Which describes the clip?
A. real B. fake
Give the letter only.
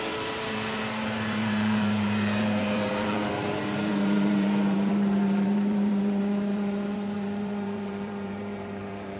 B